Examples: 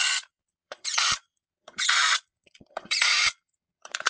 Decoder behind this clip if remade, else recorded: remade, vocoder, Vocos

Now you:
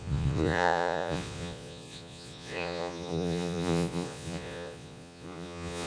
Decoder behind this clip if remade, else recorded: remade, vocoder, Vocos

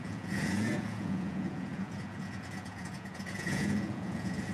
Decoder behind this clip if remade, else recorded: remade, vocoder, Vocos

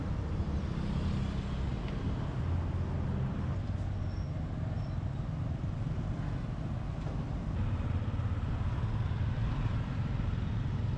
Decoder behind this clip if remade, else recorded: recorded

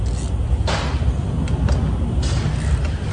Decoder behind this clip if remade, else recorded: recorded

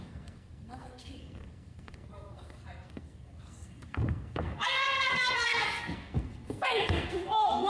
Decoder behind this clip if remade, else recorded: remade, codec, SNAC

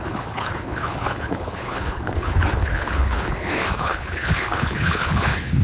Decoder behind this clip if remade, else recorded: remade, codec, HILCodec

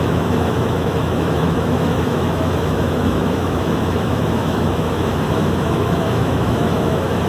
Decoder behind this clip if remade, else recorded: remade, autoencoder, DAC-VAE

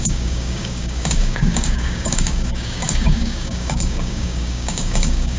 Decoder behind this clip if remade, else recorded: remade, codec, DAC